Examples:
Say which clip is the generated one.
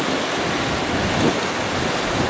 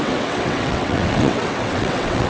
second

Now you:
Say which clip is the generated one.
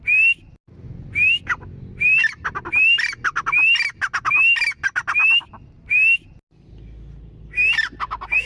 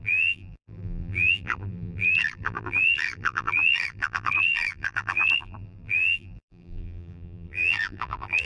second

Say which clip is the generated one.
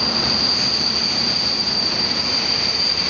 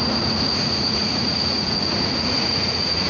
second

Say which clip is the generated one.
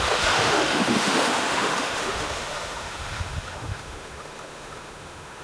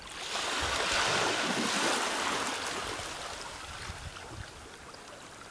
first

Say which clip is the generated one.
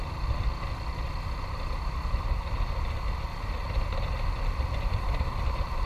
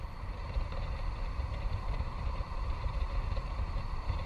second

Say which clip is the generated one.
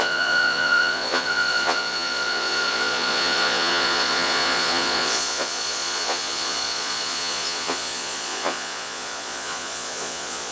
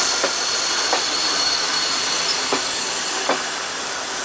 first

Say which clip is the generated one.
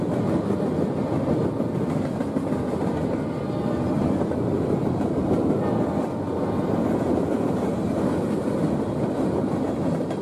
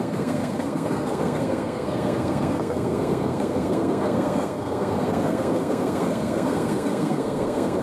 second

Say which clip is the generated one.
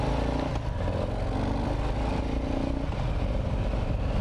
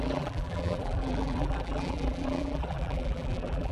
second